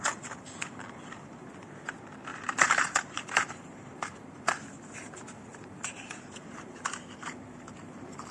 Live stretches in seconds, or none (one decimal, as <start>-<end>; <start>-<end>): 0.0-2.3; 4.0-5.5; 7.8-8.3